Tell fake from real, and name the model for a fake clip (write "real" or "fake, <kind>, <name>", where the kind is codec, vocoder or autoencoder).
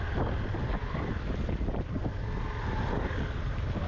real